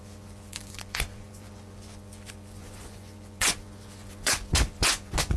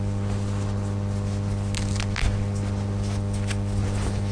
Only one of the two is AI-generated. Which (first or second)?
first